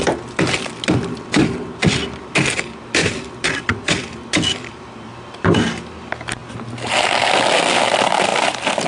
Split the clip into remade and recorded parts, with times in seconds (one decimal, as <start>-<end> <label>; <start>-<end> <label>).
0.0-3.0 recorded; 3.0-5.1 remade; 5.1-8.3 recorded; 8.3-8.9 remade